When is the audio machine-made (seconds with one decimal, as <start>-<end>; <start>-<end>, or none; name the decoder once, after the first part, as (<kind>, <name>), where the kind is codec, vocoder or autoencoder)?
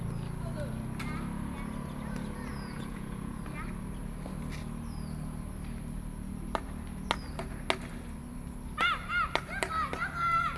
2.5-3.4 (vocoder, Vocos)